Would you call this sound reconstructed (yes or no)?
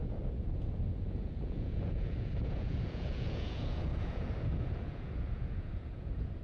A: yes